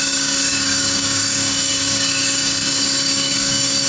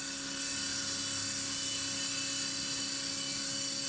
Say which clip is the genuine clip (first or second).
second